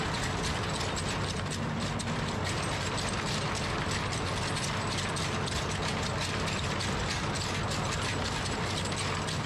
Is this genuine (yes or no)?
yes